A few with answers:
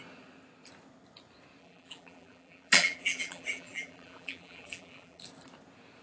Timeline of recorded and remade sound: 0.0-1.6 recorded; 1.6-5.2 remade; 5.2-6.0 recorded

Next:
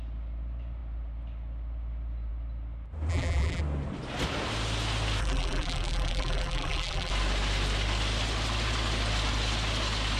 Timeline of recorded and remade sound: 0.0-3.1 recorded; 3.1-3.6 remade; 3.6-5.2 recorded; 5.2-7.1 remade; 7.1-10.2 recorded

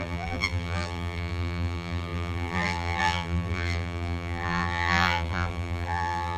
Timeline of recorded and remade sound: 0.0-6.4 remade

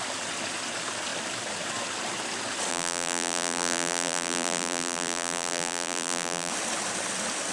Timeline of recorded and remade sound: 0.0-2.7 recorded; 2.7-6.5 remade; 6.5-7.5 recorded

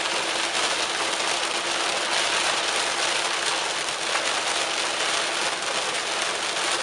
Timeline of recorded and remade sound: 0.0-6.8 recorded

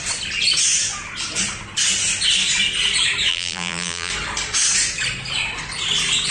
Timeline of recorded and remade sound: 0.0-3.3 recorded; 3.3-4.1 remade; 4.1-6.3 recorded